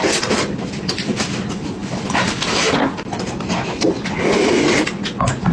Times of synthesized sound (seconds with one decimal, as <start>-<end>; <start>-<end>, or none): none